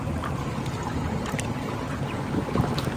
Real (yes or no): yes